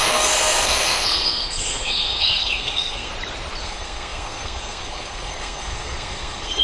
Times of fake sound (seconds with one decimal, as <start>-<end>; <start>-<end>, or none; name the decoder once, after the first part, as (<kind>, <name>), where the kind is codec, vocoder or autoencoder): 0.0-3.1 (codec, SNAC); 3.6-6.6